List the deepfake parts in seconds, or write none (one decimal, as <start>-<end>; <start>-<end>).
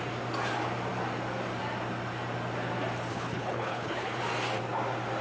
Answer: 3.1-4.2